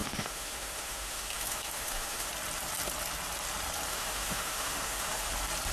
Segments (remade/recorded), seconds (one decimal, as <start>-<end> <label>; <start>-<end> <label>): 0.0-2.3 remade; 2.3-3.9 recorded; 3.9-5.3 remade; 5.3-5.7 recorded